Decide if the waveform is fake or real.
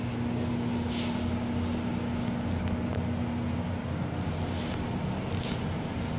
real